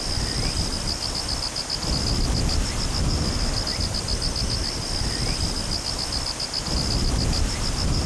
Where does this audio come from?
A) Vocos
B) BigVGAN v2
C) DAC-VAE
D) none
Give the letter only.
D